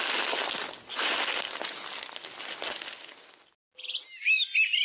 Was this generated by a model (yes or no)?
no